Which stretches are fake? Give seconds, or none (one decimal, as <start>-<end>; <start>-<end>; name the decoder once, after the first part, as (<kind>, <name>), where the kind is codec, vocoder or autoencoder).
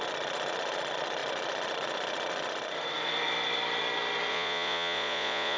4.3-5.6 (vocoder, Vocos)